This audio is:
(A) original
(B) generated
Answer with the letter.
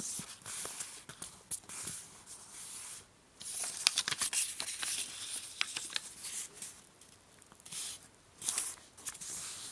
A